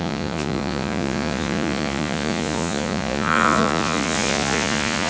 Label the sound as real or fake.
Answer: fake